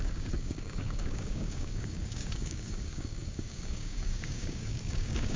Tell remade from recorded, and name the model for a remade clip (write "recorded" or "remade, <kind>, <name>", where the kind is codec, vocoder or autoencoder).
remade, codec, DAC